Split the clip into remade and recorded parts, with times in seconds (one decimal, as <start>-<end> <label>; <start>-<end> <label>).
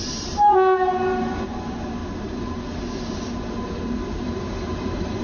0.0-5.2 remade